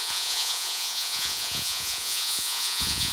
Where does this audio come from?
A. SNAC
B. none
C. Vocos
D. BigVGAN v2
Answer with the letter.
C